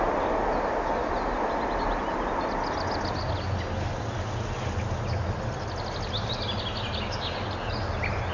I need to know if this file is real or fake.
real